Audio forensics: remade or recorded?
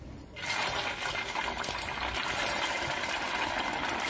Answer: recorded